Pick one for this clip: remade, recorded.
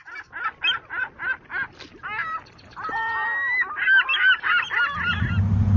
recorded